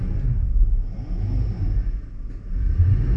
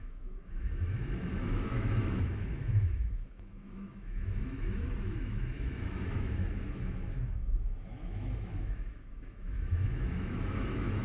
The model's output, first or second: second